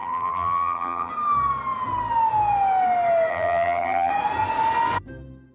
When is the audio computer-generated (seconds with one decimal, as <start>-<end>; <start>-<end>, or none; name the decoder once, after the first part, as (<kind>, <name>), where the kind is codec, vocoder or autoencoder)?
0.0-1.1 (vocoder, BigVGAN v2); 3.3-4.1